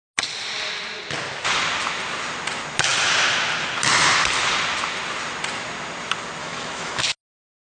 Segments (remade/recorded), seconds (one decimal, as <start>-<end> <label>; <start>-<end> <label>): 0.0-6.4 recorded; 6.4-7.0 remade; 7.0-7.6 recorded